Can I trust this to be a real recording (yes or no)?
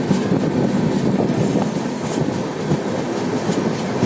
yes